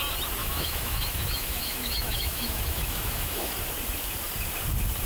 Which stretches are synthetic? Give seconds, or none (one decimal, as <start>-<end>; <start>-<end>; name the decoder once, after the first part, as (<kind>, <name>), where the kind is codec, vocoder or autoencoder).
0.4-3.5 (autoencoder, DAC-VAE)